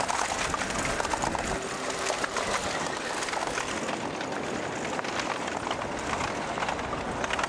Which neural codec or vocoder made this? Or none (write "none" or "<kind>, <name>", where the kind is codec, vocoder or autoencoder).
none